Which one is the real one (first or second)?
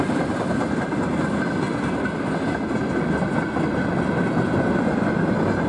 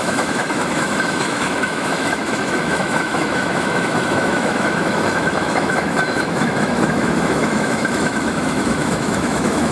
first